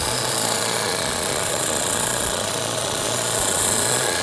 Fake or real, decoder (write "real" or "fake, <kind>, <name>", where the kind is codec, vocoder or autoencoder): fake, vocoder, Vocos